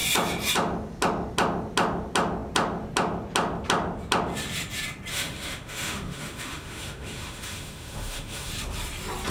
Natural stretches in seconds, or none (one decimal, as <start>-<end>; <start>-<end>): 0.0-5.1; 8.5-9.3